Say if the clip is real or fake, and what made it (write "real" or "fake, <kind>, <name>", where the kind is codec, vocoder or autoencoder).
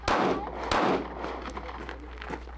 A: real